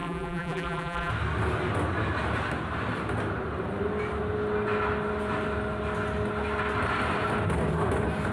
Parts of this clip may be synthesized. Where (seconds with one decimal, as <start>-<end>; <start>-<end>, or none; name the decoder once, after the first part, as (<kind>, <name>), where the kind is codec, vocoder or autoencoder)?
0.0-1.1 (vocoder, BigVGAN v2)